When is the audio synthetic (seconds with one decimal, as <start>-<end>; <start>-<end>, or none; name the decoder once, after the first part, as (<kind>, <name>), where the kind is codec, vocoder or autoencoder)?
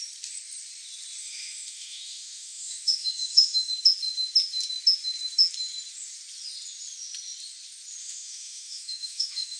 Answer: 1.2-3.7 (autoencoder, DAC-VAE); 8.0-9.6